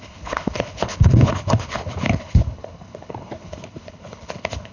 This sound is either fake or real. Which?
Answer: fake